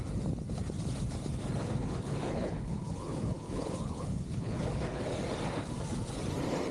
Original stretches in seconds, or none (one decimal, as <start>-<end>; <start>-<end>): 0.0-1.6; 5.0-6.7